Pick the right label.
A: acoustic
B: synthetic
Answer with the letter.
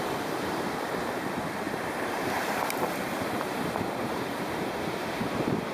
B